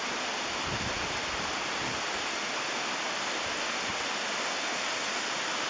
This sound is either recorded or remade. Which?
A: recorded